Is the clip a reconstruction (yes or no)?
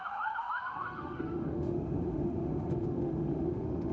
yes